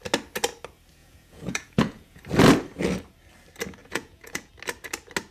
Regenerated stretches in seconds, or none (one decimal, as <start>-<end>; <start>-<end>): 1.0-2.2; 3.8-4.5